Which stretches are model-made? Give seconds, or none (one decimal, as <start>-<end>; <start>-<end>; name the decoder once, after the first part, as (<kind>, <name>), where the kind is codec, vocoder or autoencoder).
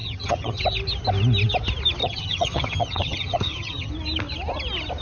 0.0-0.6 (vocoder, HiFi-GAN); 2.0-3.9